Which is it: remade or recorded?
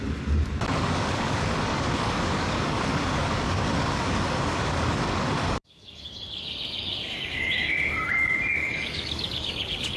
remade